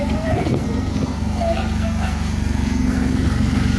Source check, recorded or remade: remade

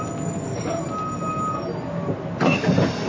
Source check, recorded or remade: recorded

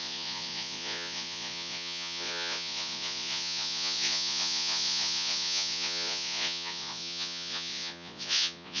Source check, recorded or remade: remade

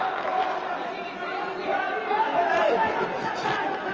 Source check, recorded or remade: recorded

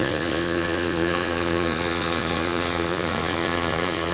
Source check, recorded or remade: remade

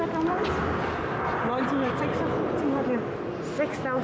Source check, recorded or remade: recorded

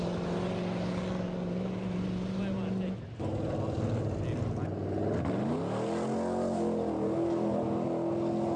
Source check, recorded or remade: recorded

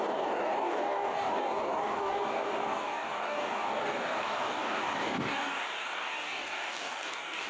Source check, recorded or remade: remade